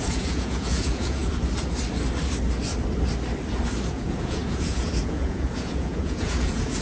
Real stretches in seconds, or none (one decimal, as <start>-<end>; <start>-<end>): 1.2-3.9